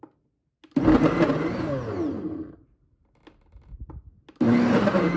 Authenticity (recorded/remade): recorded